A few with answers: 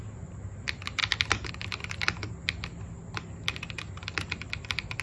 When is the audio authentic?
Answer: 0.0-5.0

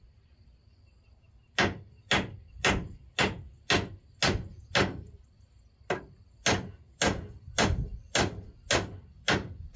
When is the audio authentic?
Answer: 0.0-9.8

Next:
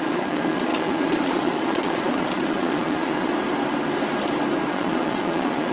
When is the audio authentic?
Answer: 3.3-4.7

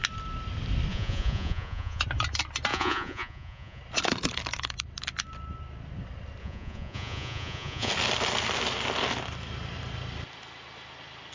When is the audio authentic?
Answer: 0.0-0.9; 2.0-2.7; 3.8-6.4; 7.9-11.3

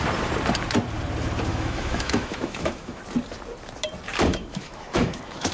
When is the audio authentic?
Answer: 0.0-1.5; 3.0-4.3